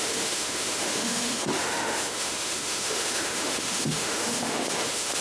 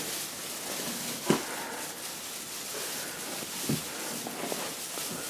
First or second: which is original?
second